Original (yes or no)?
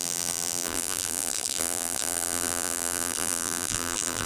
no